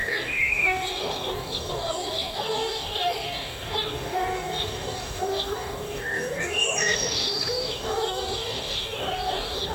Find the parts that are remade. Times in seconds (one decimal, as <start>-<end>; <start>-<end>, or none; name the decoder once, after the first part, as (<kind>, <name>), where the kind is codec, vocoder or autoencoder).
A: 0.0-9.7 (codec, DAC)